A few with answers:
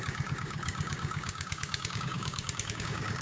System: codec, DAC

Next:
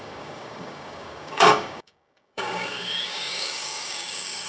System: codec, DAC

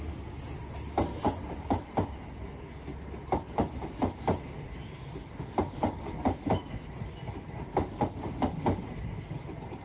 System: none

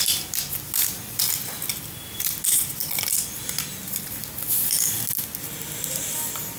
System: none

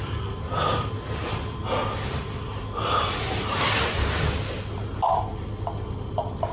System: none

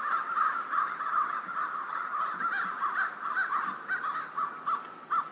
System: none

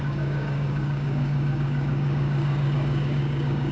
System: codec, DAC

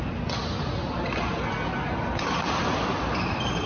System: none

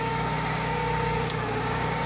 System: codec, DAC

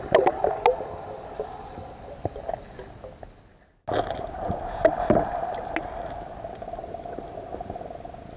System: none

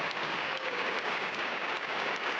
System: codec, DAC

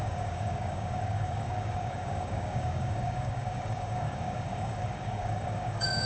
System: codec, DAC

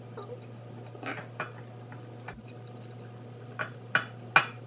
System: none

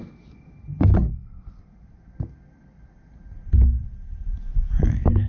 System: none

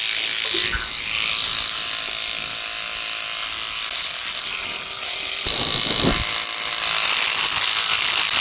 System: none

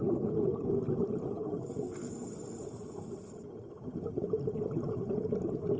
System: none